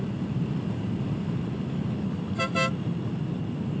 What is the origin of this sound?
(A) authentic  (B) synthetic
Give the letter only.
A